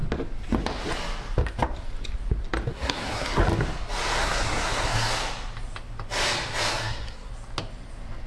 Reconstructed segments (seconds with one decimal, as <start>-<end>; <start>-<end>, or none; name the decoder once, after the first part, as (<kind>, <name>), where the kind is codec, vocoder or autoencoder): 2.7-3.4 (codec, SNAC); 4.2-5.1; 6.7-7.3